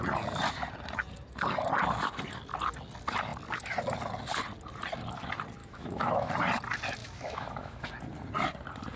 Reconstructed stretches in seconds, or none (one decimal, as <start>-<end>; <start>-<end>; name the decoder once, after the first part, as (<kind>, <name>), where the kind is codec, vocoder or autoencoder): 5.6-6.3 (autoencoder, DAC-VAE); 7.0-7.9